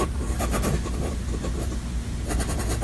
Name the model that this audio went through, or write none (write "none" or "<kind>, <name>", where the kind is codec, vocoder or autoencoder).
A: none